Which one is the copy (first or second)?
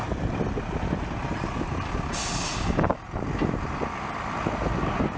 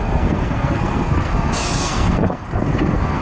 second